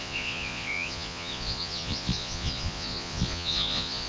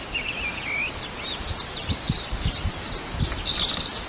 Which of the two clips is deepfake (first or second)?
first